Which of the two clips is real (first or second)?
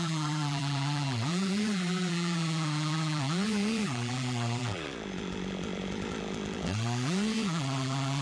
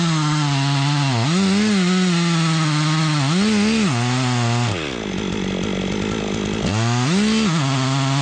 second